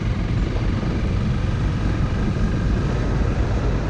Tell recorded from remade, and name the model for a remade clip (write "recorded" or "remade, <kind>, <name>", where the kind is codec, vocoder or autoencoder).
recorded